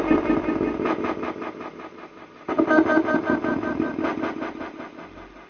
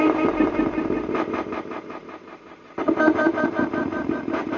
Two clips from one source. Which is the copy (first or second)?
second